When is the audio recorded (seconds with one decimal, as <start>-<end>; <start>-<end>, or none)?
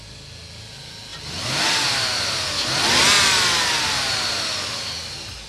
0.0-5.5